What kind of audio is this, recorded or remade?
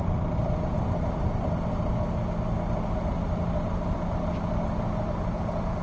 recorded